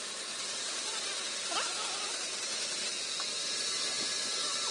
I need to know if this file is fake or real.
real